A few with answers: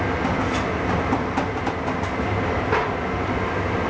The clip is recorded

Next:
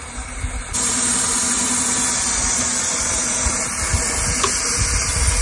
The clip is recorded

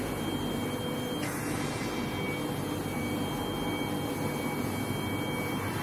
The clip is recorded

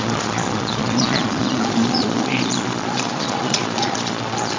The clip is remade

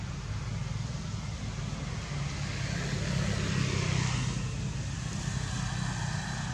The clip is recorded